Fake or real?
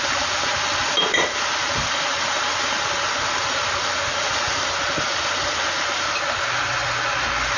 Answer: real